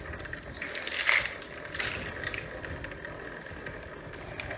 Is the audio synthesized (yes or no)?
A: no